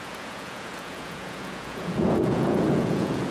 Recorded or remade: remade